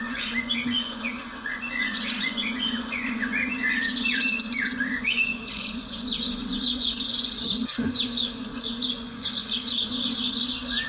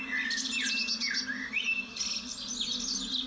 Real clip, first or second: second